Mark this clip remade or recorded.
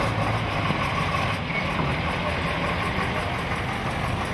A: recorded